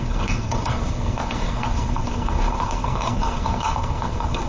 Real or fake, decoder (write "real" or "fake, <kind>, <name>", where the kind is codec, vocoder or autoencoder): fake, codec, SNAC